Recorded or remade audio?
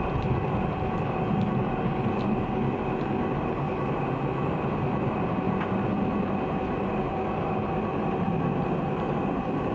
recorded